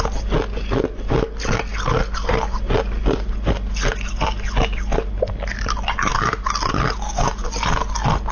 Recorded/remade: recorded